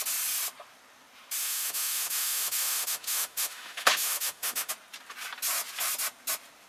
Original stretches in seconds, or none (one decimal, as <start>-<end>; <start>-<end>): 0.0-1.4; 4.7-6.7